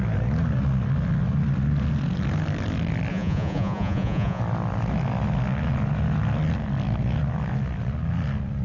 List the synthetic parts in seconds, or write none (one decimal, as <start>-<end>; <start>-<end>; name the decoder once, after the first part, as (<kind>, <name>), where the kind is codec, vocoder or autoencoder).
3.1-4.4 (vocoder, Vocos)